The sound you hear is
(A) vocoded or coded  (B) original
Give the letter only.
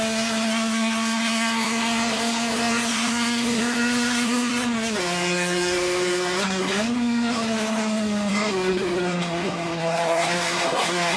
A